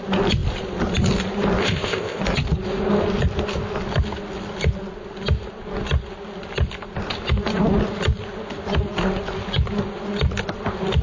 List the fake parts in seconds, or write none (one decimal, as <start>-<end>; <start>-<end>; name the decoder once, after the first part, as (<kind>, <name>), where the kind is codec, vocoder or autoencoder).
1.6-2.2 (codec, ZipCodec)